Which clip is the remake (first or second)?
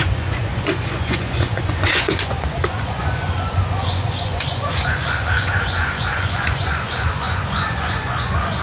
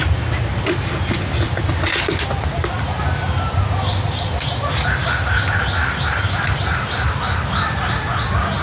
first